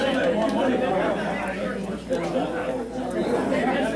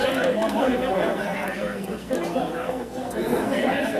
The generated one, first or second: second